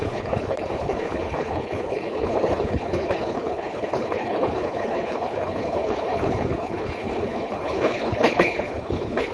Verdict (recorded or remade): remade